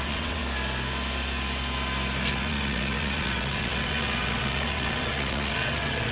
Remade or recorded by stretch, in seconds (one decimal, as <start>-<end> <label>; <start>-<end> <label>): 0.0-0.4 remade; 0.4-2.3 recorded; 2.3-6.1 remade